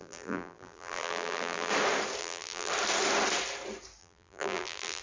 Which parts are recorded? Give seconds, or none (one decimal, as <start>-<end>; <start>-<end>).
1.7-2.2; 2.7-4.0